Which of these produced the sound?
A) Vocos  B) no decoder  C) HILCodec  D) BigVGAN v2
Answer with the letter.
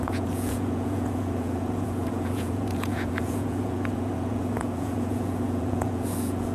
A